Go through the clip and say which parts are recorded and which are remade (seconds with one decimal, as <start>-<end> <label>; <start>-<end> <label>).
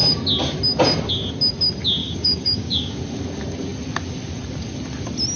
0.0-2.0 recorded; 2.0-3.0 remade; 3.0-5.4 recorded